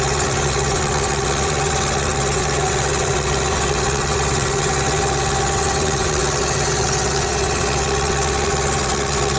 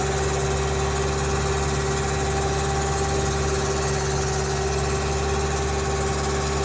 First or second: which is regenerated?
first